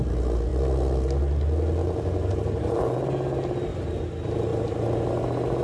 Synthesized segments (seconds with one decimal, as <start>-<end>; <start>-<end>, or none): 1.8-2.8; 4.5-5.1